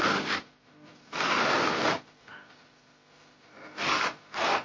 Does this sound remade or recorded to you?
recorded